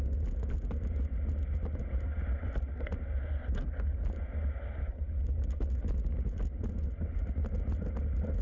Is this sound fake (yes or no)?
no